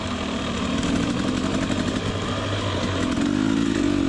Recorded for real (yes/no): yes